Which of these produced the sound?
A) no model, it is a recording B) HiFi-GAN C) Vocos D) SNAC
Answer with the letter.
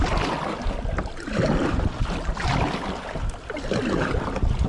A